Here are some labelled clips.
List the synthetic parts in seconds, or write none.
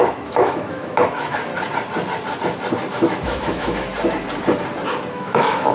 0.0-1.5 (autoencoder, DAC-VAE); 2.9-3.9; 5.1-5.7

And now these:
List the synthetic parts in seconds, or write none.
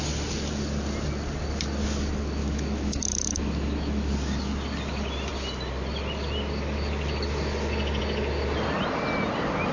2.4-4.1 (autoencoder, DAC-VAE)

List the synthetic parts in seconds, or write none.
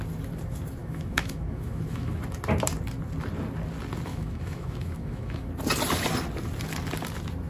0.8-2.2 (autoencoder, DAC-VAE); 4.1-5.5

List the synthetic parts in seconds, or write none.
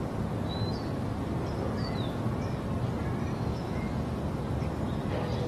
3.3-3.9 (autoencoder, DAC-VAE)